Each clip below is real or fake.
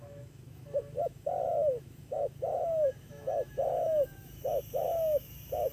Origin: fake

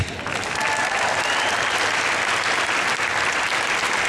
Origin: real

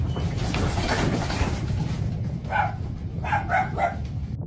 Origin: real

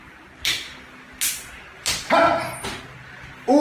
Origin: real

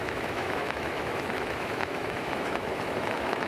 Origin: fake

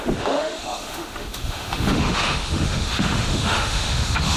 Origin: fake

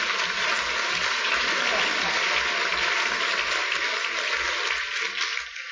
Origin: real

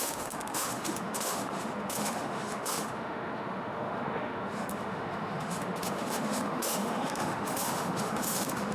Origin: fake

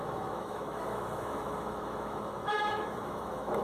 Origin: fake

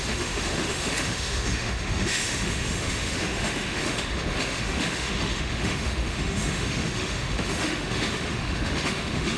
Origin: fake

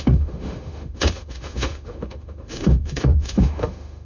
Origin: fake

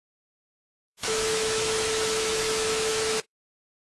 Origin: fake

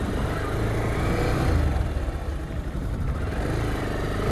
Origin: real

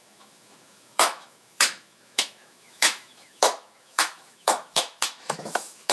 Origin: fake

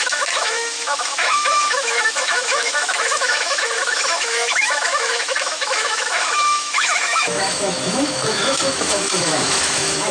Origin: fake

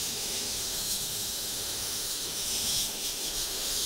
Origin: fake